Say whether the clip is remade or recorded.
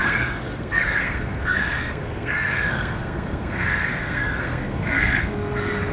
remade